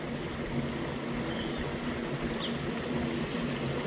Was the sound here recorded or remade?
recorded